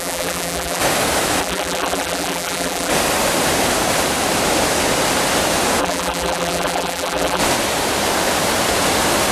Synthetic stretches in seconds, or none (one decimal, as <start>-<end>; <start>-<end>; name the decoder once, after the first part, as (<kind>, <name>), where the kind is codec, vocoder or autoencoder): 0.0-0.8 (vocoder, BigVGAN v2); 1.4-2.9; 5.8-7.4